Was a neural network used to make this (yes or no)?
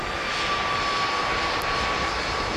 no